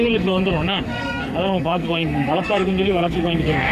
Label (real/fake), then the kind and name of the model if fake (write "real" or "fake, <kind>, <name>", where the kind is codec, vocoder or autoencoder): fake, codec, SNAC